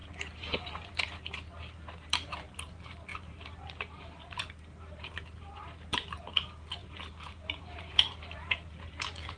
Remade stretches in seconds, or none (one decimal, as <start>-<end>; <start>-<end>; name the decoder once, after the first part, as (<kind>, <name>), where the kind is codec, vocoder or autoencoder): 0.0-9.4 (vocoder, BigVGAN v2)